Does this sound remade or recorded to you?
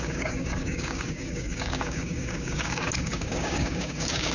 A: remade